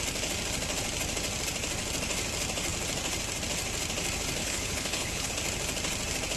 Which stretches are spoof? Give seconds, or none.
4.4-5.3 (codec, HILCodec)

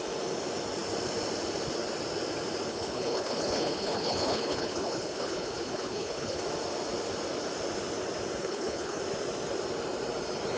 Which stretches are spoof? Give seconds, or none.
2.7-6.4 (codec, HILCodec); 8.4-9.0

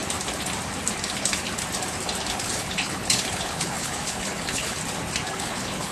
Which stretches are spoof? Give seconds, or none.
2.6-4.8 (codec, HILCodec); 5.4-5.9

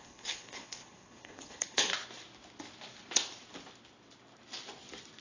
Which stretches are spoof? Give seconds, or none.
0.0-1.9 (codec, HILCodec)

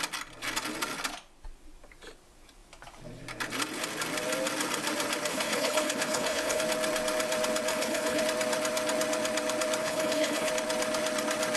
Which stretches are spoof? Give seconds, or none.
5.3-6.6 (codec, HILCodec); 7.7-8.2; 9.8-10.5